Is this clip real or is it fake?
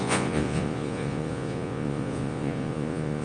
fake